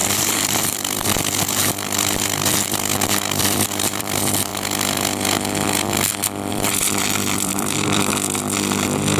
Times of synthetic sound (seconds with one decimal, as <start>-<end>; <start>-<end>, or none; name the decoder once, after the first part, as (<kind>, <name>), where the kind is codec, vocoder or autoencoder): 0.0-2.9 (vocoder, BigVGAN v2); 3.4-4.5; 6.5-8.1